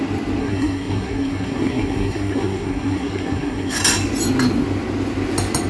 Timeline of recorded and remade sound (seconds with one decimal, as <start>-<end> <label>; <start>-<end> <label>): 0.0-0.4 recorded; 0.4-3.8 remade; 3.8-5.7 recorded